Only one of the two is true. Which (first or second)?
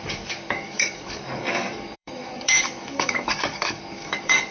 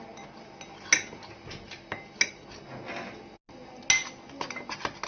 second